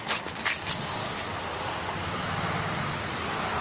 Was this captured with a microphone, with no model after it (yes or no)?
yes